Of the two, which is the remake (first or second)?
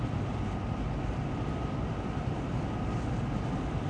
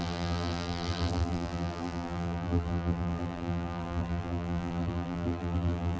second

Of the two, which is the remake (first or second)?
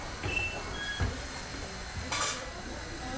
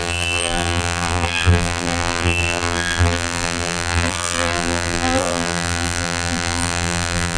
second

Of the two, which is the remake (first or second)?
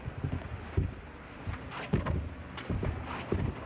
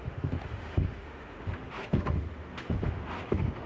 second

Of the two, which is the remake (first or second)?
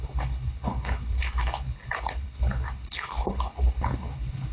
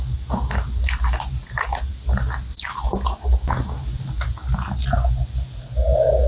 first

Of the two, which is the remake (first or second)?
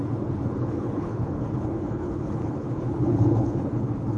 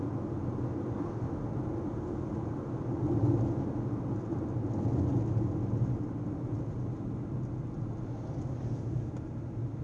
first